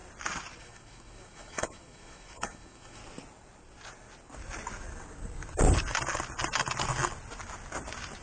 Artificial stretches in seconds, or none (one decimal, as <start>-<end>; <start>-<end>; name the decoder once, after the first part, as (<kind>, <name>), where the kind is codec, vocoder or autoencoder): 0.6-3.0 (autoencoder, DAC-VAE)